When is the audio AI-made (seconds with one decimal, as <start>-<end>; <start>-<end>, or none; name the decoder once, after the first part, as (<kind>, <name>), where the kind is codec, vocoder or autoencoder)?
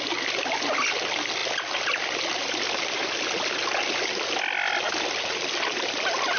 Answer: none